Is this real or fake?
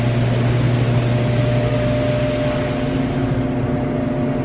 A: real